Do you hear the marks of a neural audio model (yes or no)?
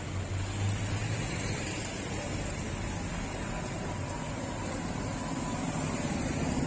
no